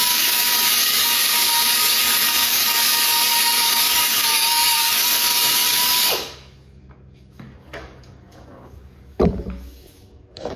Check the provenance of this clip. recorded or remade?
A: remade